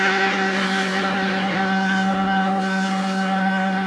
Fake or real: fake